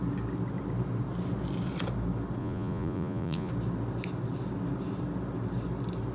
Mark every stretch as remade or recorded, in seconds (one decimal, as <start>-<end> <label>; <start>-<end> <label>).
0.0-2.4 recorded; 2.4-3.5 remade; 3.5-6.1 recorded